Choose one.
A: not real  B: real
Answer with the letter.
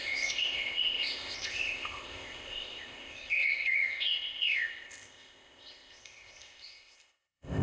A